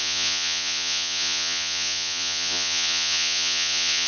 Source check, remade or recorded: remade